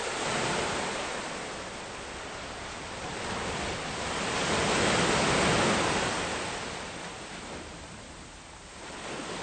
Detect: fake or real real